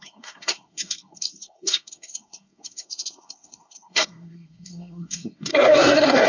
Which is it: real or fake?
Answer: fake